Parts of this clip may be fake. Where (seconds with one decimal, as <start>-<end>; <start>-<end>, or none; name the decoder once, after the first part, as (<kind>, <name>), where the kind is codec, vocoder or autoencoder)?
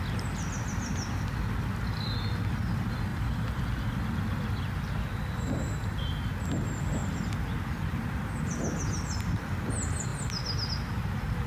3.1-3.6 (vocoder, BigVGAN v2)